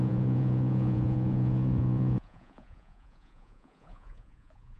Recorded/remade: remade